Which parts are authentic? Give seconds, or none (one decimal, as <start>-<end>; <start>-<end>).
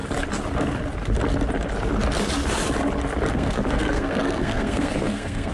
0.0-3.3